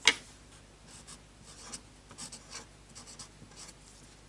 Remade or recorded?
recorded